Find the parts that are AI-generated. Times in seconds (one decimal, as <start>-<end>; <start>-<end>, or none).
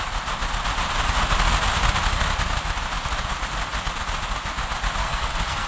5.0-5.7